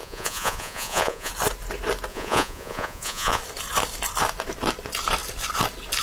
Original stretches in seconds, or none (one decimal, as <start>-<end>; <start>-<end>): 1.3-2.1; 3.4-6.0

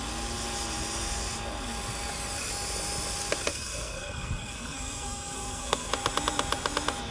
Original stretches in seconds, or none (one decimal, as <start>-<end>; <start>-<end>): 0.0-3.5; 5.9-7.1